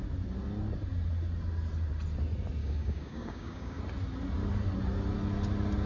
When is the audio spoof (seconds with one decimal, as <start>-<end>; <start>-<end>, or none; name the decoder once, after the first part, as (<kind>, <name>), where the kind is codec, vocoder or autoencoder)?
2.6-3.8 (codec, DAC)

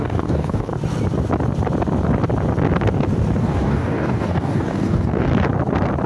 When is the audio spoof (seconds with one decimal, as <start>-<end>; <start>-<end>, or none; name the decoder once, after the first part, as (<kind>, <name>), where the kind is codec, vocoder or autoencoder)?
0.0-0.7 (codec, DAC); 3.4-5.3

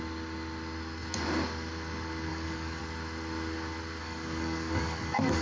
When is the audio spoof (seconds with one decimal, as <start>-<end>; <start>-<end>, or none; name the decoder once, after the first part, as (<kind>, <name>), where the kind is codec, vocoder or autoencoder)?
2.3-2.8 (codec, DAC); 4.0-5.4

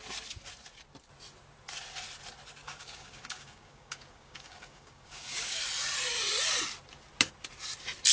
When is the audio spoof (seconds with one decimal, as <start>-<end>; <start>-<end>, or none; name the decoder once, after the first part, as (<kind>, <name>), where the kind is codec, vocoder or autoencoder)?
2.6-5.6 (codec, DAC)

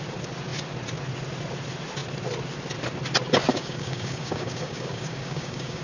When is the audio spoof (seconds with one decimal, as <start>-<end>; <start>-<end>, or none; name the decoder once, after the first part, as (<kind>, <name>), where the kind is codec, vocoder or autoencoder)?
3.5-5.8 (codec, DAC)

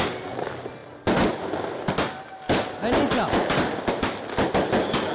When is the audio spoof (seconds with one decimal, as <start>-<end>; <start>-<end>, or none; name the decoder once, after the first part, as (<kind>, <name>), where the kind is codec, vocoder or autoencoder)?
none

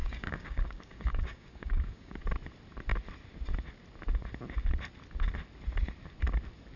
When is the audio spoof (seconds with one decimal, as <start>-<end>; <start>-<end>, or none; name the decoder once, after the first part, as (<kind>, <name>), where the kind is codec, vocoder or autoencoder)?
0.0-2.2 (codec, DAC)

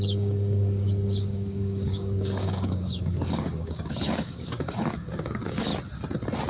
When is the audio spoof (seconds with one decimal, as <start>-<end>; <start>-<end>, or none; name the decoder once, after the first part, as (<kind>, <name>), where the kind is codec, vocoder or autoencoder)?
0.0-5.7 (codec, DAC)